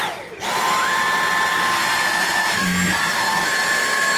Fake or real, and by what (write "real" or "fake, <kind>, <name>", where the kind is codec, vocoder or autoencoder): real